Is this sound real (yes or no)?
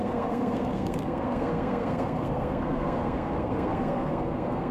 no